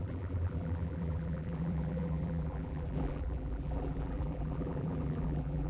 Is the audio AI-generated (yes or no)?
yes